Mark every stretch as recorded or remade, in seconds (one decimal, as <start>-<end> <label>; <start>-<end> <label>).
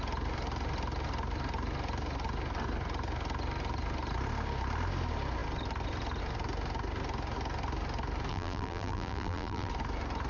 0.0-8.3 recorded; 8.3-9.7 remade; 9.7-10.3 recorded